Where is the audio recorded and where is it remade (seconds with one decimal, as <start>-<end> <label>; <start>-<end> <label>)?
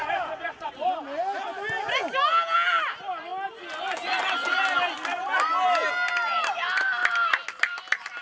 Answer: 0.0-0.7 remade; 0.7-8.2 recorded